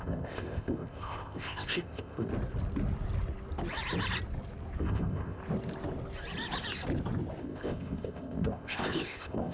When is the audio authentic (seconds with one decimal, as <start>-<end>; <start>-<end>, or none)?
2.3-4.8; 5.4-7.4